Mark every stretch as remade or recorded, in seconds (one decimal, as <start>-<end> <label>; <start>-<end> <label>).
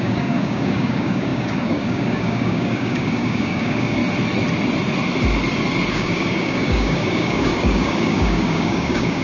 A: 0.0-4.0 remade; 4.0-5.9 recorded; 5.9-9.2 remade